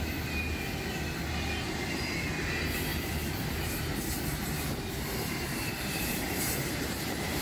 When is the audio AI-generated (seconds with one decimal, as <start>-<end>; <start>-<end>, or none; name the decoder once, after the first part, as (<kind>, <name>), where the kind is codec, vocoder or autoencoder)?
2.9-7.4 (vocoder, BigVGAN v2)